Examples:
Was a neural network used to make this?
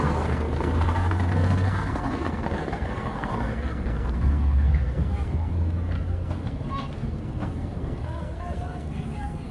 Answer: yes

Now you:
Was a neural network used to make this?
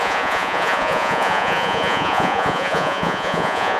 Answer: yes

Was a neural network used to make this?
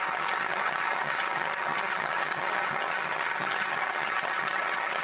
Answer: yes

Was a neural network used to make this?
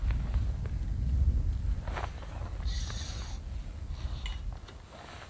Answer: no